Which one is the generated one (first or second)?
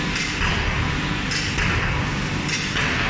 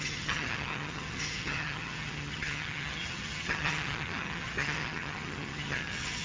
second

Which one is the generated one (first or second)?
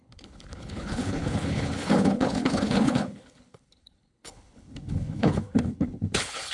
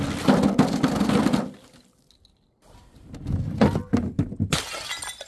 first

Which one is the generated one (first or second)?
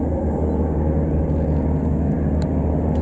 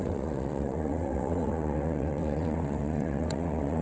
second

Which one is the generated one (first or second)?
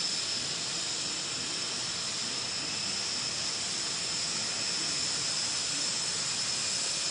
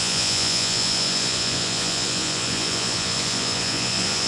second